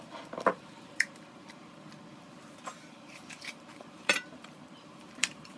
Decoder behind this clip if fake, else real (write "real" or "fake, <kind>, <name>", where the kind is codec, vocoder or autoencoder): fake, vocoder, BigVGAN v2